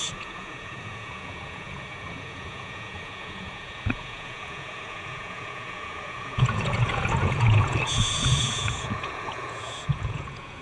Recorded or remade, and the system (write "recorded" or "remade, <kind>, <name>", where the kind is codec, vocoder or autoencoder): remade, vocoder, Vocos